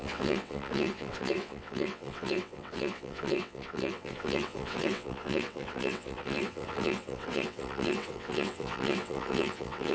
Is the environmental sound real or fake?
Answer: fake